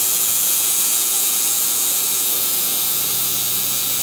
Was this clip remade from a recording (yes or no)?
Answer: yes